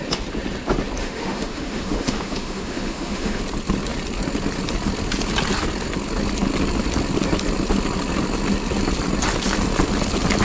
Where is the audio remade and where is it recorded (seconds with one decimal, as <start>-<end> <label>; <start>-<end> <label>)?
0.0-1.0 recorded; 1.0-3.4 remade; 3.4-10.4 recorded